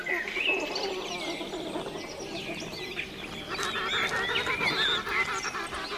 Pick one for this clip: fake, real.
real